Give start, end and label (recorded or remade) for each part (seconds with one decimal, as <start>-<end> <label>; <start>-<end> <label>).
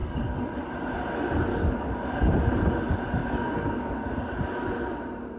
0.0-0.6 remade; 0.6-1.5 recorded; 1.5-2.0 remade; 2.0-3.2 recorded; 3.2-4.1 remade; 4.1-5.4 recorded